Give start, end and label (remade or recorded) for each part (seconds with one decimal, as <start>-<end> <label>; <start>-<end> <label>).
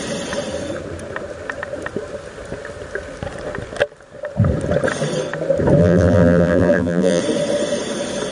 0.0-5.8 recorded; 5.8-7.2 remade; 7.2-8.3 recorded